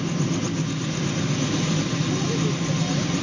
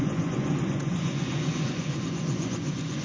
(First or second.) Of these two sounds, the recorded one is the first